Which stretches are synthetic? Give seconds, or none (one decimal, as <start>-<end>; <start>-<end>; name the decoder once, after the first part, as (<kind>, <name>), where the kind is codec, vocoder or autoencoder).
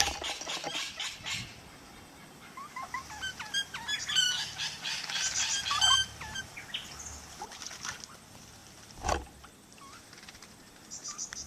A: none